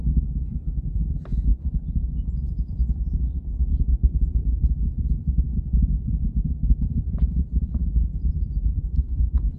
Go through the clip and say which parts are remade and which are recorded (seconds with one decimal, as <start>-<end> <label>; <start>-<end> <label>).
0.0-4.1 recorded; 4.1-4.9 remade; 4.9-6.6 recorded; 6.6-9.6 remade